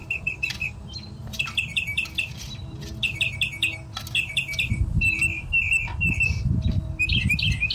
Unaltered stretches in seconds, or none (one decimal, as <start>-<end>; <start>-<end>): 3.2-4.7; 6.8-7.7